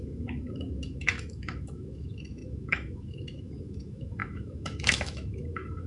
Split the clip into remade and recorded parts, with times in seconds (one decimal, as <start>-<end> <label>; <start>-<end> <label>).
0.0-5.9 remade